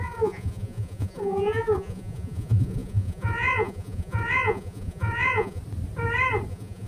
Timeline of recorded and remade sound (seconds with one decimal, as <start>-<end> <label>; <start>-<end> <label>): 0.0-5.6 remade; 5.6-6.5 recorded; 6.5-6.9 remade